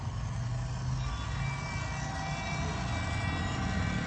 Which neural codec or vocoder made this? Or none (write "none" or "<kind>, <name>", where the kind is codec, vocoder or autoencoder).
none